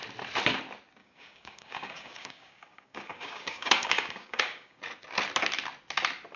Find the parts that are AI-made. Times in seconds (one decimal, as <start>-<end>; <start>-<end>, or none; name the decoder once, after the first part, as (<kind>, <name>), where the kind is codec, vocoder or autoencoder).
1.0-4.8 (codec, DAC)